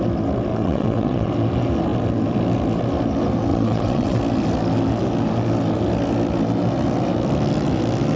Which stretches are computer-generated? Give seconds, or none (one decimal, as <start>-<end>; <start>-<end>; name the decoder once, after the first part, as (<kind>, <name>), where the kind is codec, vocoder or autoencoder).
0.5-1.3 (vocoder, WaveNeXt); 3.5-4.2

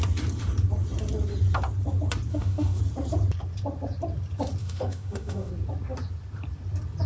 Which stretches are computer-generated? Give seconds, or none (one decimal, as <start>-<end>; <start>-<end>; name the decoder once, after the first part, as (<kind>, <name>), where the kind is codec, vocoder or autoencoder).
2.3-2.8 (autoencoder, DAC-VAE); 4.6-5.5

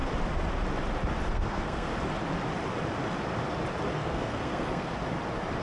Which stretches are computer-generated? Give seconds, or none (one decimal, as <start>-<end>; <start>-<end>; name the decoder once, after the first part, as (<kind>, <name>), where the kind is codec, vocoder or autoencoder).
1.3-1.9 (codec, SNAC); 3.9-4.9

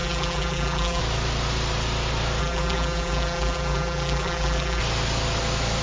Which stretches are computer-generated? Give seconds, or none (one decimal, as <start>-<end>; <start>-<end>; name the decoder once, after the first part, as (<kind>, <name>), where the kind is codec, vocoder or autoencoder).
0.0-1.0 (vocoder, BigVGAN v2); 2.4-4.8

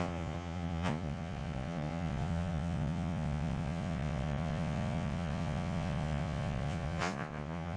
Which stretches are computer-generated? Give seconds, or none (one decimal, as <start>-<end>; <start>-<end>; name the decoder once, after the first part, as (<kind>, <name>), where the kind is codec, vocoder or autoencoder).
0.0-7.8 (vocoder, Vocos)